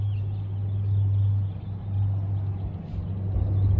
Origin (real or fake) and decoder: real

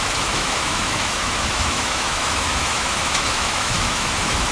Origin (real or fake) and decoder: fake, autoencoder, DAC-VAE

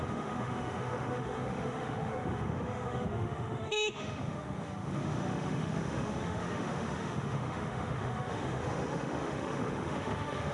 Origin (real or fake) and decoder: fake, autoencoder, DAC-VAE